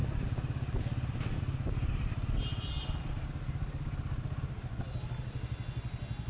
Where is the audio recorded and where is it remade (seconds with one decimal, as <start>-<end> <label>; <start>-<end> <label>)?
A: 0.0-6.3 recorded